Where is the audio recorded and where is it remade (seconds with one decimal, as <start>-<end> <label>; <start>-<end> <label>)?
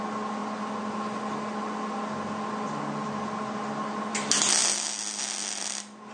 0.0-6.1 recorded